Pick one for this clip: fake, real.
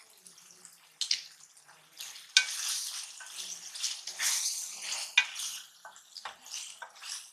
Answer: real